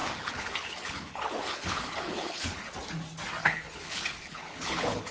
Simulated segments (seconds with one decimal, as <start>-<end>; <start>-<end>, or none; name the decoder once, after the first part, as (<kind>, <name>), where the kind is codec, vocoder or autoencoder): 0.0-2.7 (codec, HILCodec); 3.4-5.1